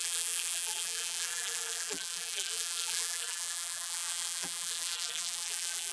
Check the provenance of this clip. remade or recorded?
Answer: remade